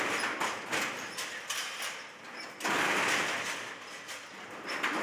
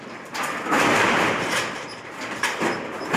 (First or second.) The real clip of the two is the first